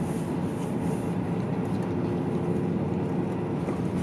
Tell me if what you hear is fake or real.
real